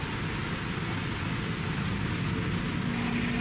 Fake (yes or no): no